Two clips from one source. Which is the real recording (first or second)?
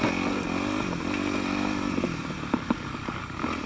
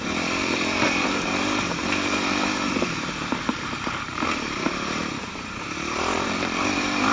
first